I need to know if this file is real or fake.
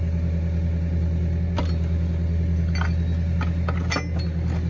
real